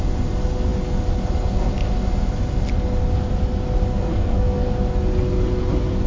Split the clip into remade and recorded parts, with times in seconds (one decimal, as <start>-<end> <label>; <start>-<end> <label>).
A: 0.0-4.1 recorded; 4.1-4.7 remade; 4.7-6.1 recorded